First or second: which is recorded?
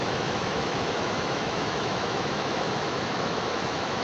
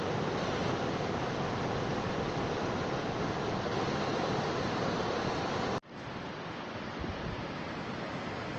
second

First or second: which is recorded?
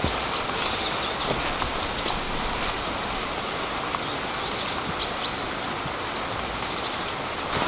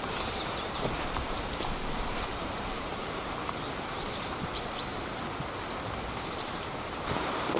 first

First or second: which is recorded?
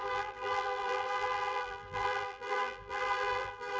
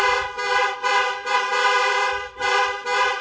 second